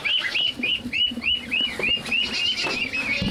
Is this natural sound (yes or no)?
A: yes